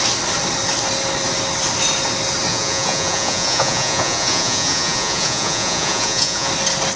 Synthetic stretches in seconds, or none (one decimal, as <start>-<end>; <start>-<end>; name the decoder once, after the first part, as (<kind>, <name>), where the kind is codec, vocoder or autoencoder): 2.5-6.5 (vocoder, Vocos)